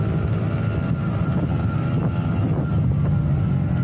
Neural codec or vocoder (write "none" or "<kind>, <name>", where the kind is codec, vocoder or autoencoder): none